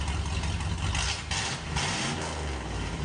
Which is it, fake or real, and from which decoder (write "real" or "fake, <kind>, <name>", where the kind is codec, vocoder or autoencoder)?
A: real